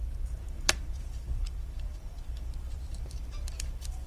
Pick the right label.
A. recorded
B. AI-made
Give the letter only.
B